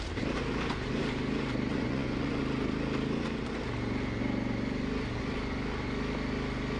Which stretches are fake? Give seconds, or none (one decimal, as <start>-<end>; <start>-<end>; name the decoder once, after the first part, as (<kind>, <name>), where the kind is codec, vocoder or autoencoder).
1.7-2.4 (vocoder, Vocos)